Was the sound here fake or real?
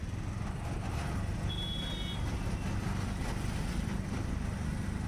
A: real